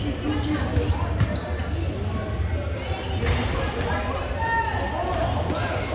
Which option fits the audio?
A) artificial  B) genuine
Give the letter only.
B